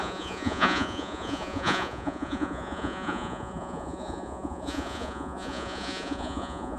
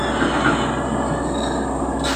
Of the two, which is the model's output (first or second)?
first